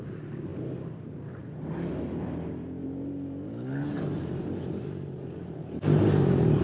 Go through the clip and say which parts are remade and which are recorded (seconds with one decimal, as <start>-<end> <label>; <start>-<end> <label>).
0.0-0.5 remade; 0.5-2.0 recorded; 2.0-2.8 remade; 2.8-4.0 recorded; 4.0-6.6 remade